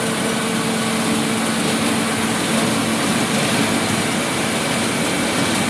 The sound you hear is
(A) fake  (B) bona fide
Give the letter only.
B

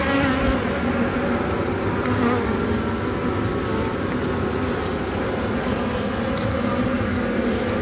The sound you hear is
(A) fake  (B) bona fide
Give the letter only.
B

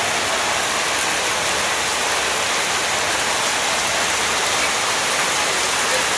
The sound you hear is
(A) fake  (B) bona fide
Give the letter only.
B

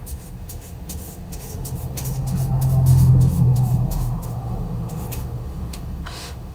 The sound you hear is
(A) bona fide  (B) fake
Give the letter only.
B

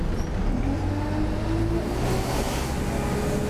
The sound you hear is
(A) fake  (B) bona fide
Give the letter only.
B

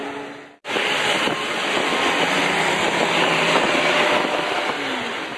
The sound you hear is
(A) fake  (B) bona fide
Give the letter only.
B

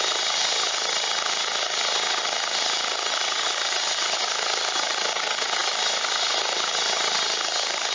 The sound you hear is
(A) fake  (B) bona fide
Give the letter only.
B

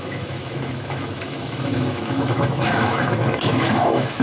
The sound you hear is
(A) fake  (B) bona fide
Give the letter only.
A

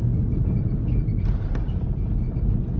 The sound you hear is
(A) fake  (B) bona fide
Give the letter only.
B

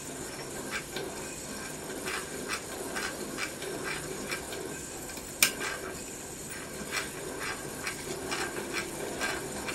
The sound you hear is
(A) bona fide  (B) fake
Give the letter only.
A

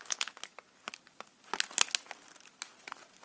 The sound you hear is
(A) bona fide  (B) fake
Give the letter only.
A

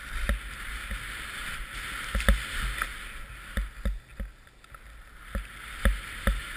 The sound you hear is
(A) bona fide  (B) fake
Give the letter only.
A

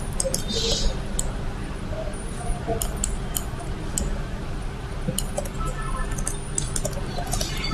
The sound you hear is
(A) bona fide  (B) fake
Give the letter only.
A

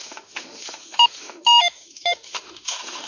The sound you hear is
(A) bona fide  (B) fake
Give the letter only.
B